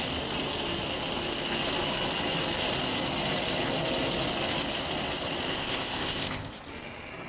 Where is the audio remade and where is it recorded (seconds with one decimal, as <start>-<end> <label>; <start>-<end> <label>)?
0.0-5.5 recorded; 5.5-6.5 remade; 6.5-7.3 recorded